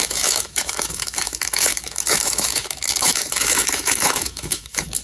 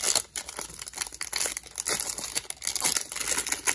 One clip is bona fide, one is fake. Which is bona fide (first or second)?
second